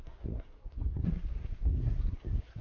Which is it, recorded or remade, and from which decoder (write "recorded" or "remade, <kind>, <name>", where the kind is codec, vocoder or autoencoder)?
remade, codec, SNAC